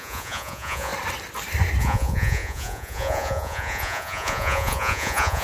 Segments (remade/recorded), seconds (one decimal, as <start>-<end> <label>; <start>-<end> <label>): 0.0-0.9 remade; 0.9-1.8 recorded; 1.8-5.4 remade